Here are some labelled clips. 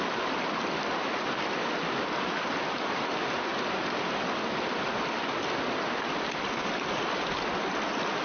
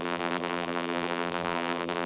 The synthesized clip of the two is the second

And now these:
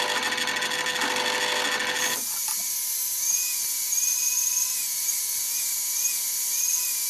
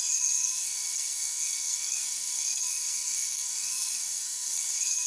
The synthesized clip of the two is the second